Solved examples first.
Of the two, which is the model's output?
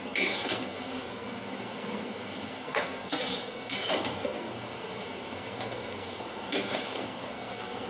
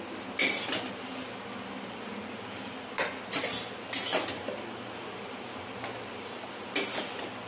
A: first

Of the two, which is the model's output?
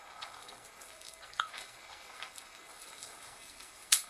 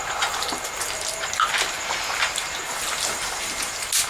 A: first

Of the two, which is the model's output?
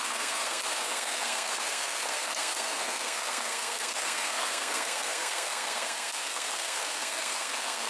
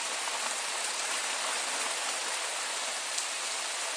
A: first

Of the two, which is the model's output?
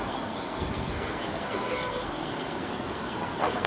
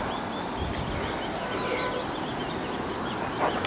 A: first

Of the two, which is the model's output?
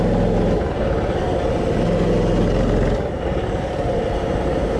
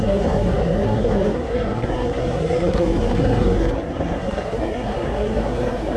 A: second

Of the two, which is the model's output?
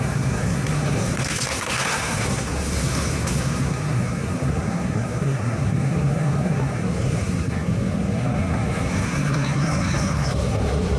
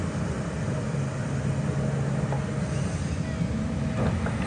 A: first